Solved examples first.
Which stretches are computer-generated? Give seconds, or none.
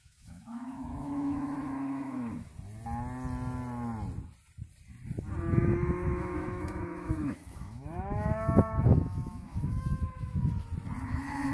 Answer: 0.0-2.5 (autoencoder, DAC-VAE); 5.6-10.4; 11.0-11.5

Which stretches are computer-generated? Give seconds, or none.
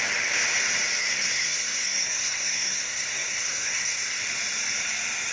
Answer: 1.0-4.2 (codec, SNAC)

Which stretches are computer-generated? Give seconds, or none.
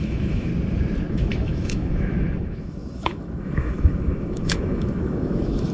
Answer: 0.0-0.5 (autoencoder, DAC-VAE); 1.1-5.7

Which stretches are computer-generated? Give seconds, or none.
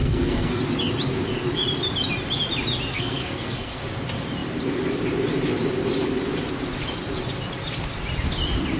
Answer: 0.0-0.6 (codec, SNAC); 2.9-3.8